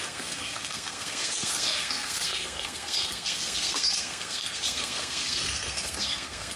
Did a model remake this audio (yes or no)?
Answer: yes